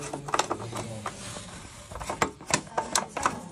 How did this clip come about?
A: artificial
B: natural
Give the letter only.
B